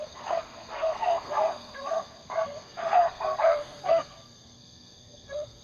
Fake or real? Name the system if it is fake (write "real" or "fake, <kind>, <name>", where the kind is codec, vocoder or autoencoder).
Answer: fake, codec, SNAC